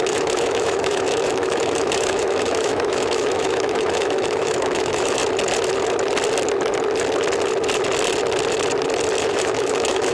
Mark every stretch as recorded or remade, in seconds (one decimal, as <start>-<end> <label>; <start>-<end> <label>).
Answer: 0.0-5.2 remade; 5.2-9.2 recorded; 9.2-10.1 remade